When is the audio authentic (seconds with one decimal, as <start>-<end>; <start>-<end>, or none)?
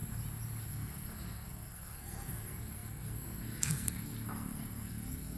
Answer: 0.0-0.7